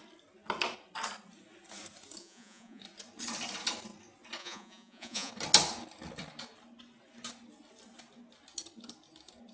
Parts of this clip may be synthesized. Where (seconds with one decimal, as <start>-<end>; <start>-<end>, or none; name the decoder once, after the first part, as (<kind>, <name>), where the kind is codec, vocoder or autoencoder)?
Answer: 2.2-2.8 (vocoder, Vocos); 4.4-5.3